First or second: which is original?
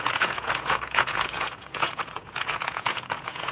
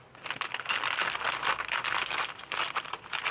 second